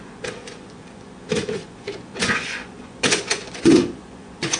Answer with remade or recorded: remade